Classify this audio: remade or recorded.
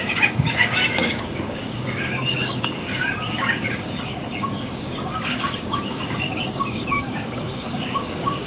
remade